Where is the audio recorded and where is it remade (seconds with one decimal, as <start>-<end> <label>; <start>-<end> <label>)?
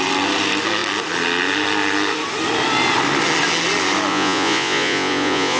0.0-4.1 recorded; 4.1-5.6 remade